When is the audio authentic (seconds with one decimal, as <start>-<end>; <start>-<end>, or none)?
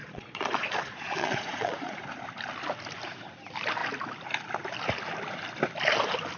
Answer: 2.0-6.4